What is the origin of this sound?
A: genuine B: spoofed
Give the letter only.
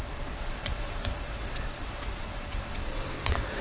B